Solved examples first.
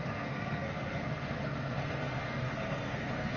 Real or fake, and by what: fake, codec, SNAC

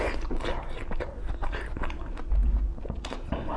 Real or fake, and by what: real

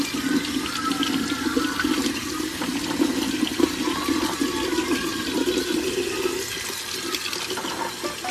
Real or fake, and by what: real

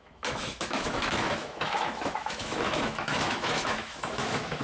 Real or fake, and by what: fake, autoencoder, DAC-VAE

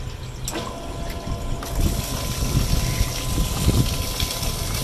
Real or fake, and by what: real